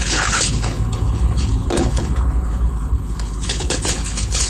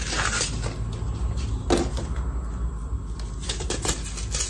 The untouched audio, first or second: second